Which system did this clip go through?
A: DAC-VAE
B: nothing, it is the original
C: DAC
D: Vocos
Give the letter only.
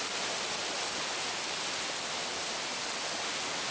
B